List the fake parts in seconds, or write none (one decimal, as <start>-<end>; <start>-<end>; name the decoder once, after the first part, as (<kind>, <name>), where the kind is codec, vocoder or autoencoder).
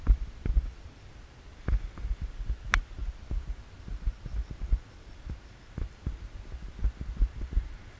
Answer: none